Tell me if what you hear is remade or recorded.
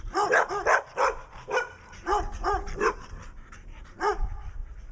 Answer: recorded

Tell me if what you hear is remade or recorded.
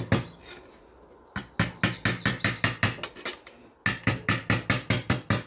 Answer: recorded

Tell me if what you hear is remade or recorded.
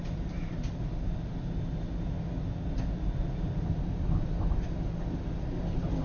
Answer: recorded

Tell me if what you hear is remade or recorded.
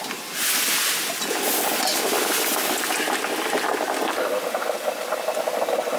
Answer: recorded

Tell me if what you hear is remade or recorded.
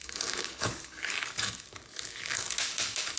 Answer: remade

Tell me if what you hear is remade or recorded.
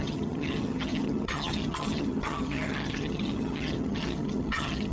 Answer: remade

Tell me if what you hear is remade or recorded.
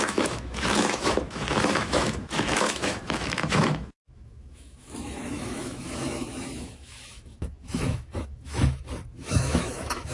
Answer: remade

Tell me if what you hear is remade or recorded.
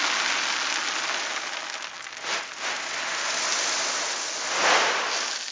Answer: recorded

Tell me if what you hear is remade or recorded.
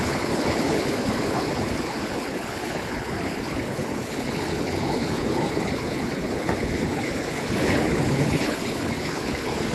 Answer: remade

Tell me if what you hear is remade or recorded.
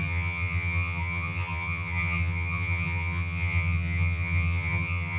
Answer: remade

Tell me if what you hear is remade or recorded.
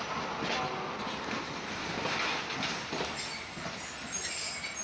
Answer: recorded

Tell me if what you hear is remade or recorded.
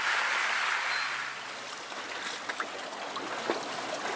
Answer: recorded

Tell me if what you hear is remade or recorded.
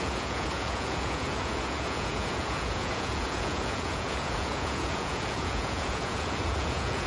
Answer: remade